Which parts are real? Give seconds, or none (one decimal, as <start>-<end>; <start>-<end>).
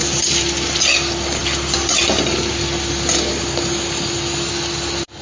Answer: 0.0-5.2